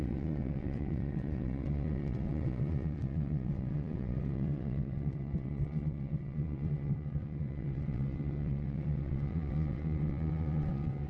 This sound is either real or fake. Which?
fake